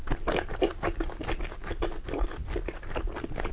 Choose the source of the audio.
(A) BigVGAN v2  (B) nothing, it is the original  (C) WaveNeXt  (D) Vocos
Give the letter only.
B